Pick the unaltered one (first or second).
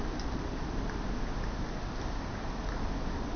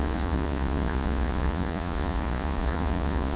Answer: first